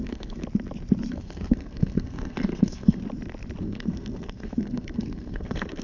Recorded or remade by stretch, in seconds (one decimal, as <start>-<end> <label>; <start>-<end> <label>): 0.0-0.4 remade; 0.4-1.1 recorded; 1.1-3.0 remade; 3.0-3.6 recorded; 3.6-5.8 remade